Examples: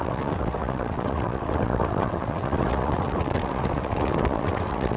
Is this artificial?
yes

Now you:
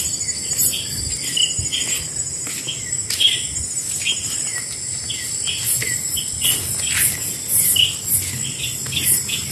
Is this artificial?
no